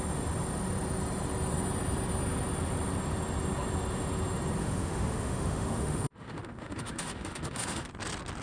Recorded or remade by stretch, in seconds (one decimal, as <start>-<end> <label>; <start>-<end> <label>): 0.0-4.6 recorded; 4.6-7.9 remade; 7.9-8.4 recorded